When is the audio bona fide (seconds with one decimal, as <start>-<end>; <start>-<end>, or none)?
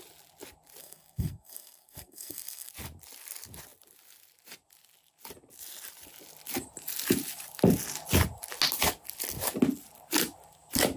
0.0-0.8; 2.7-11.0